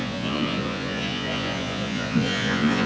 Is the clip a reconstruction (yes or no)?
yes